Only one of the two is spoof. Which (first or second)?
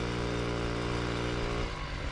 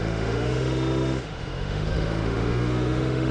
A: second